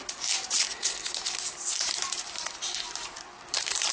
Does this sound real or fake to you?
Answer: fake